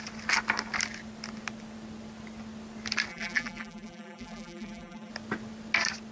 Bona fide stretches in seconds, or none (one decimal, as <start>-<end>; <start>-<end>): 0.0-3.1; 5.1-6.1